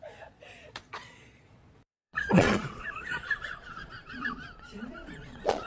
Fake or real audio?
fake